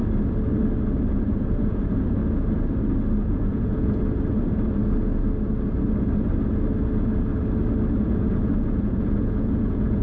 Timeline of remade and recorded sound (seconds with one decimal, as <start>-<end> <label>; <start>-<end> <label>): 0.0-1.1 recorded; 1.1-2.2 remade; 2.2-3.2 recorded; 3.2-4.0 remade; 4.0-8.0 recorded; 8.0-10.0 remade